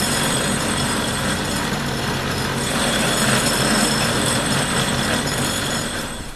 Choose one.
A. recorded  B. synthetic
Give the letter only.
B